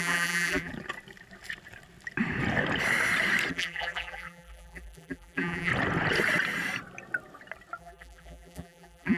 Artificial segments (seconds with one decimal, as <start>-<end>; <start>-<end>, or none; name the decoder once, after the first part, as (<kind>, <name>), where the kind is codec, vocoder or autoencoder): 0.0-0.7 (vocoder, BigVGAN v2); 3.5-5.7; 7.8-9.2